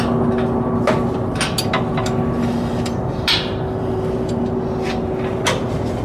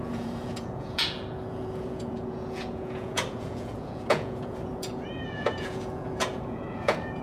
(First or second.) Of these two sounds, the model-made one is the second